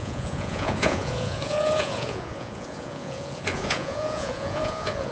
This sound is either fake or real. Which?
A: fake